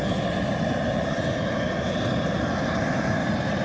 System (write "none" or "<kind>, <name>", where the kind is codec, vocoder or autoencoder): none